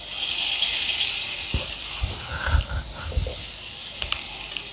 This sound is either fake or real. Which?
real